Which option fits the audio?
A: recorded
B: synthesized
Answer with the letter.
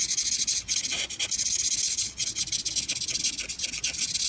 A